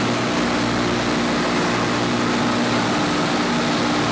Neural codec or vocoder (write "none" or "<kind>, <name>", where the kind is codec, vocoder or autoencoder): none